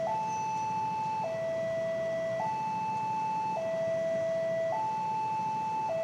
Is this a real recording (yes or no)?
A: yes